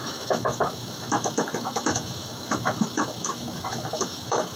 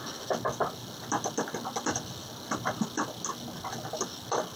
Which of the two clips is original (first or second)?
second